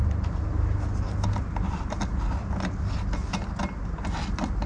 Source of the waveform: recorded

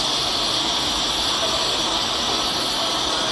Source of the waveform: recorded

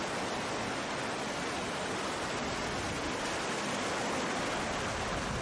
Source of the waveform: recorded